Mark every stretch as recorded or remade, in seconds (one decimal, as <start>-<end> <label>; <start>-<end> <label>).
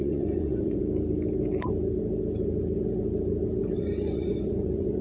0.0-0.8 remade; 0.8-3.8 recorded; 3.8-5.0 remade